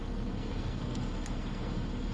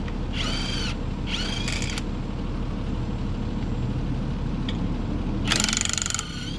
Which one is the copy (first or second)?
first